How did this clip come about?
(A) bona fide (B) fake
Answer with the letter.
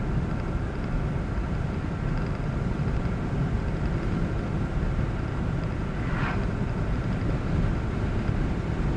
A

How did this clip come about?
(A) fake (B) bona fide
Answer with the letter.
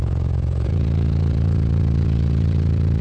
A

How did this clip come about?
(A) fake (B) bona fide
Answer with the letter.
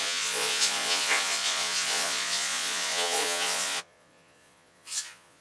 A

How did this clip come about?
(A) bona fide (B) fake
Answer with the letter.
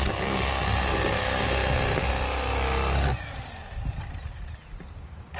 A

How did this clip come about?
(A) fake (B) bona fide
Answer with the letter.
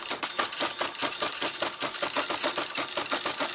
B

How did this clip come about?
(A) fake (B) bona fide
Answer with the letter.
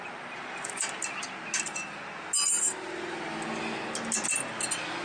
B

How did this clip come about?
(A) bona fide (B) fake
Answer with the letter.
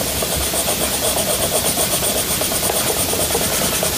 A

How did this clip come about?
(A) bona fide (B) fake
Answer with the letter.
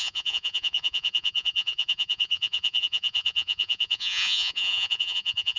B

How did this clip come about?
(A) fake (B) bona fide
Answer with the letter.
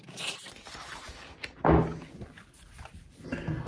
B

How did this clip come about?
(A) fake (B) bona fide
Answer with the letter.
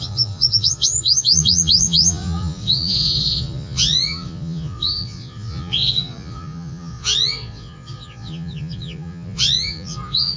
A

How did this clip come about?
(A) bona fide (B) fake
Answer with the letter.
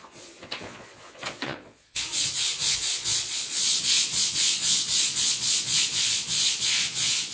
B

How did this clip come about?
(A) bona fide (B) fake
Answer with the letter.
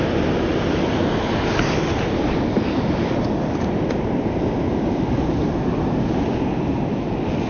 A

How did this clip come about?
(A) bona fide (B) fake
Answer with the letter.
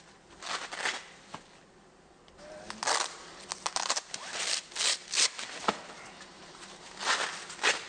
A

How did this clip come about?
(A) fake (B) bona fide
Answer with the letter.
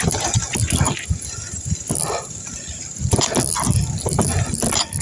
B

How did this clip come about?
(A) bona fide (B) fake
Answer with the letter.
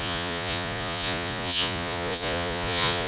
B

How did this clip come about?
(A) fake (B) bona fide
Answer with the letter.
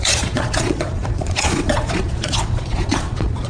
A